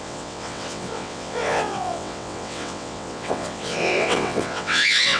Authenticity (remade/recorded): remade